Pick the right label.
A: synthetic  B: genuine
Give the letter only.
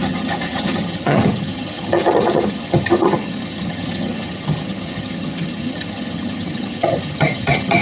A